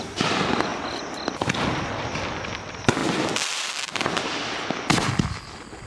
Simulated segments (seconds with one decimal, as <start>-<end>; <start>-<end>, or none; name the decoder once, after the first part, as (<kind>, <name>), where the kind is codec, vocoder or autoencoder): 0.7-2.5 (vocoder, BigVGAN v2)